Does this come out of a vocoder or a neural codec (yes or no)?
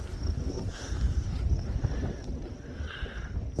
no